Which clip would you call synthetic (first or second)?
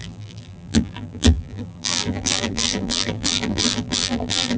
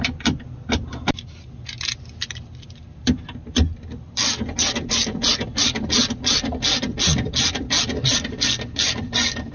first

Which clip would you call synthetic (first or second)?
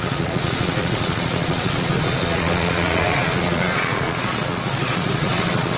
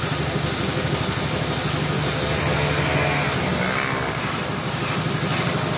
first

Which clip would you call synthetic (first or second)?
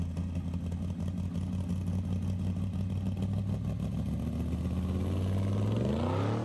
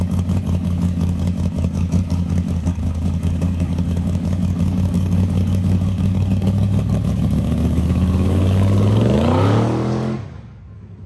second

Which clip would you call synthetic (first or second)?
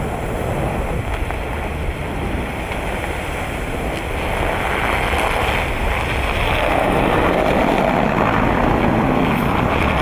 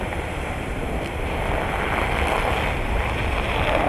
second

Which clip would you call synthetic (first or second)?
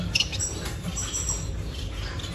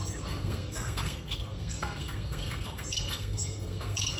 second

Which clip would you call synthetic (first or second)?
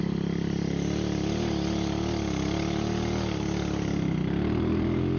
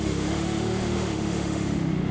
second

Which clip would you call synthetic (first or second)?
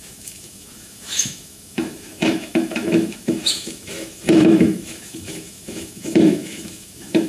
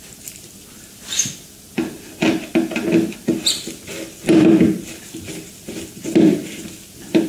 first